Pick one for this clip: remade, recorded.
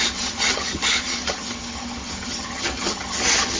remade